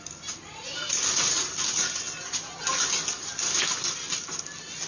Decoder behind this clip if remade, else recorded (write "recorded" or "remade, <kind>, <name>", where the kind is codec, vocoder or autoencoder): recorded